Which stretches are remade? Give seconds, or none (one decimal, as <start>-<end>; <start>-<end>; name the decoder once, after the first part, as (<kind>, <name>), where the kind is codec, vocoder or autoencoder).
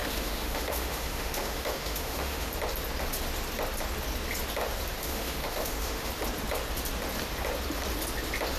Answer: 0.0-2.5 (autoencoder, DAC-VAE); 5.0-6.1